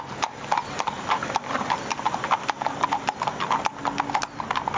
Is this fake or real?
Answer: real